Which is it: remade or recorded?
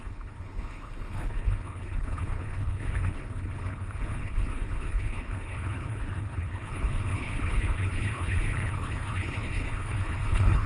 remade